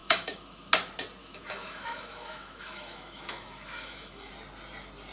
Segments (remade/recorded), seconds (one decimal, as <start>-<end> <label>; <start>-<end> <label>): 0.0-0.7 remade; 0.7-1.2 recorded; 1.2-4.3 remade; 4.3-5.1 recorded

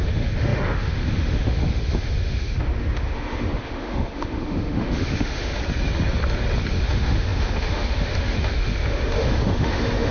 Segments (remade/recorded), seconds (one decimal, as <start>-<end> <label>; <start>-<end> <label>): 0.0-5.6 remade; 5.6-6.7 recorded; 6.7-10.1 remade

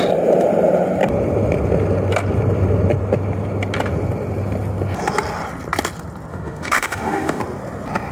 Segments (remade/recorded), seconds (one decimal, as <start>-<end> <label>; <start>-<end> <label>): 0.0-6.3 recorded; 6.3-7.4 remade; 7.4-8.1 recorded